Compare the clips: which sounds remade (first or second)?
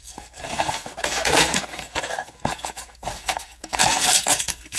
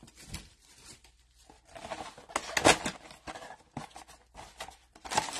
first